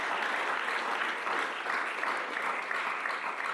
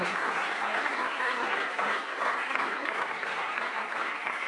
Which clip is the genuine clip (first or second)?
first